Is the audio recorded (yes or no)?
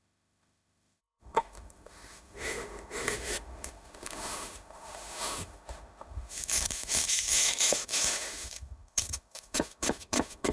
no